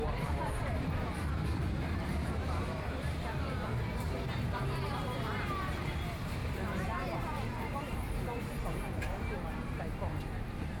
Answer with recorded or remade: remade